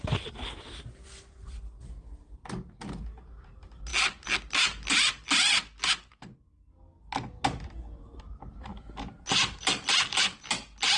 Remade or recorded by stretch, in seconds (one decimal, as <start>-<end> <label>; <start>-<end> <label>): 0.0-11.0 recorded